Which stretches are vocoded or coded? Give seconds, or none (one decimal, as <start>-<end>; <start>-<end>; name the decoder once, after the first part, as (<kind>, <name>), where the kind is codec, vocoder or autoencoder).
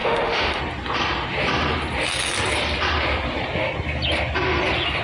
0.0-0.6 (autoencoder, DAC-VAE)